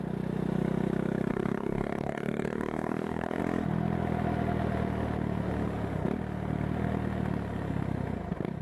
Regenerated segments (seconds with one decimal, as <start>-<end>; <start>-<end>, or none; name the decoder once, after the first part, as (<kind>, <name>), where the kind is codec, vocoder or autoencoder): 1.3-3.4 (codec, DAC)

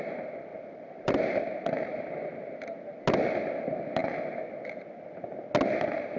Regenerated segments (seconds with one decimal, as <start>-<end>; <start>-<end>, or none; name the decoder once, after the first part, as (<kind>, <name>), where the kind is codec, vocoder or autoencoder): 0.5-3.0 (vocoder, BigVGAN v2)

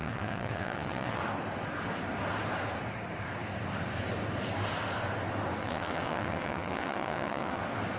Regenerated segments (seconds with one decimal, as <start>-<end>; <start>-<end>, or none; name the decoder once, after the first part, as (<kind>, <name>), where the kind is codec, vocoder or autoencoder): 0.0-1.2 (vocoder, WaveNeXt); 5.6-7.6

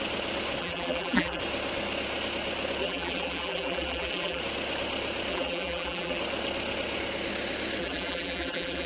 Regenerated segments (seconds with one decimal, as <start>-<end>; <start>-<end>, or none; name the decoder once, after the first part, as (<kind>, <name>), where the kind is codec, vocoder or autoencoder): 0.6-1.4 (vocoder, BigVGAN v2); 2.8-4.4; 5.3-6.2; 7.8-8.9

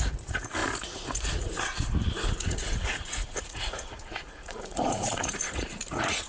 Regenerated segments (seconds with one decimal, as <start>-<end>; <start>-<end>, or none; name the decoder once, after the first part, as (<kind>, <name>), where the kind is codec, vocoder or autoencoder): 0.0-6.3 (vocoder, Vocos)

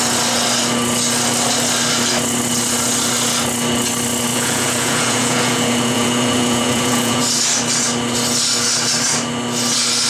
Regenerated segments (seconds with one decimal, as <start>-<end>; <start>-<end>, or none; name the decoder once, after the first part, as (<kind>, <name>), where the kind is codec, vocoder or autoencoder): 4.3-7.2 (vocoder, Vocos)